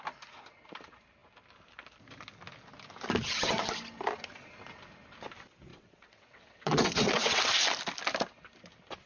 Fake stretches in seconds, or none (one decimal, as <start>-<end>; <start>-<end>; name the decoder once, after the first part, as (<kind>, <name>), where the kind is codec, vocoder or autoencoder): 5.7-7.4 (vocoder, WaveNeXt)